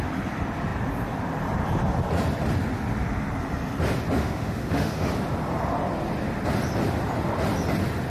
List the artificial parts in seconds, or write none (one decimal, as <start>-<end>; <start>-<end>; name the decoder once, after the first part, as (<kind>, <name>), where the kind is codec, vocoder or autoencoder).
4.2-5.1 (autoencoder, DAC-VAE)